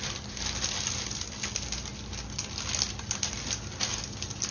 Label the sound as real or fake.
real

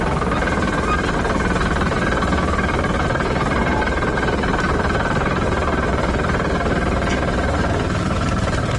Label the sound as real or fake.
fake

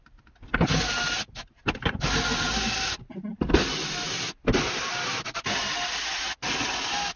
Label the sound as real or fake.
real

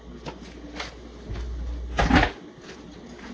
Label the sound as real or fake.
real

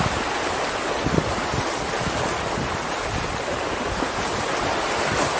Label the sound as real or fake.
real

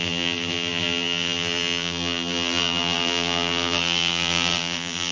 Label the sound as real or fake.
fake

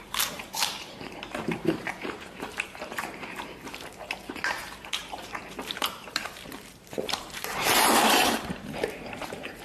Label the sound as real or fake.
fake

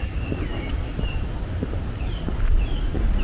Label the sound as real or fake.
real